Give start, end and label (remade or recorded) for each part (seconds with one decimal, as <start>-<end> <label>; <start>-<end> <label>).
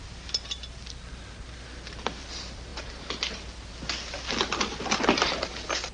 0.0-5.9 recorded